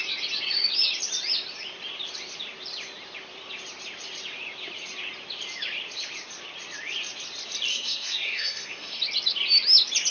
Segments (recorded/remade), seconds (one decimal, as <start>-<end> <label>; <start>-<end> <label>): 0.0-7.7 recorded; 7.7-9.0 remade; 9.0-10.1 recorded

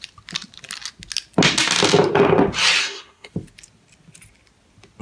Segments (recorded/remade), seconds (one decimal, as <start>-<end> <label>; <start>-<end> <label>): 0.0-2.8 recorded; 2.8-3.3 remade; 3.3-5.0 recorded

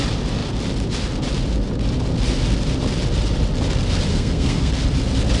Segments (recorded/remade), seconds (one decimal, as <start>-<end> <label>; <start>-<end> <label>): 0.0-4.1 recorded; 4.1-4.7 remade; 4.7-5.4 recorded

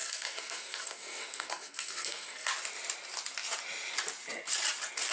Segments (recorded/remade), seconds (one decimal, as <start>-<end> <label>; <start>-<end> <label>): 0.0-2.5 remade; 2.5-5.1 recorded

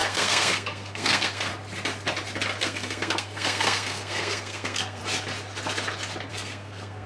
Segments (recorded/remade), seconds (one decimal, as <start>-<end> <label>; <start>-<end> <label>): 0.0-1.5 remade; 1.5-2.6 recorded; 2.6-5.0 remade; 5.0-6.3 recorded; 6.3-7.1 remade

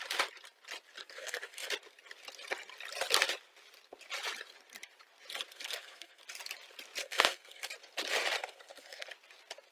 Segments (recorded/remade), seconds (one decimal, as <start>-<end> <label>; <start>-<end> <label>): 0.0-1.0 recorded; 1.0-1.7 remade; 1.7-5.5 recorded; 5.5-6.2 remade; 6.2-7.0 recorded; 7.0-7.7 remade; 7.7-8.4 recorded; 8.4-9.1 remade; 9.1-9.7 recorded